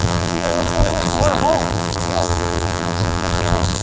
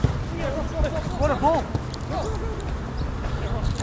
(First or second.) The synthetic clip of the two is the first